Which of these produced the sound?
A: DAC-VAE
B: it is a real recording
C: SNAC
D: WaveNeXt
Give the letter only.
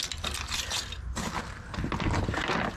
B